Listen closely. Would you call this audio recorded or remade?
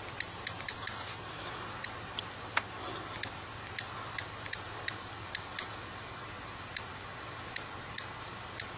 recorded